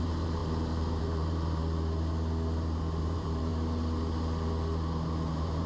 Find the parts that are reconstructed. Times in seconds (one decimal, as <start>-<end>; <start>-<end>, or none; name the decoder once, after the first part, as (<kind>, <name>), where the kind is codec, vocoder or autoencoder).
0.0-1.6 (vocoder, BigVGAN v2); 3.0-3.5; 5.3-5.7